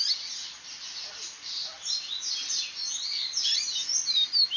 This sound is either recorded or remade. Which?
recorded